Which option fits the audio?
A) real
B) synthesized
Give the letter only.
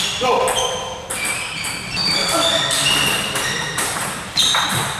B